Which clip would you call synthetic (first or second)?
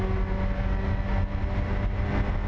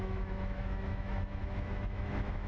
second